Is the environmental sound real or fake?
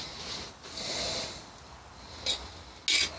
real